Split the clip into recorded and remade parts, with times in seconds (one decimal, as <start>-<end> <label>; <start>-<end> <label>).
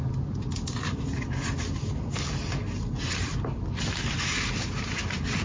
0.0-5.4 recorded